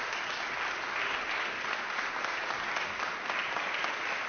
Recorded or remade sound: recorded